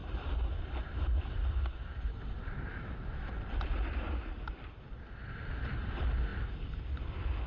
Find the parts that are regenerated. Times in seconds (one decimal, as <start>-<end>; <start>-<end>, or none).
2.7-3.3